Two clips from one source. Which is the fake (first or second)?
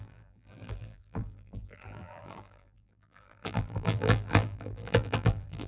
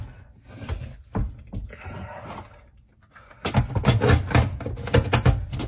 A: first